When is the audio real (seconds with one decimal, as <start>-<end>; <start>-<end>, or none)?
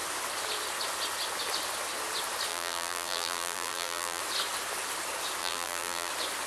0.0-2.5; 4.2-5.4; 6.1-6.5